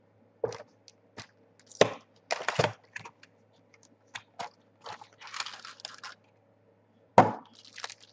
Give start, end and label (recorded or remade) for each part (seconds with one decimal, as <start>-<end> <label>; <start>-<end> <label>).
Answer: 0.0-8.1 recorded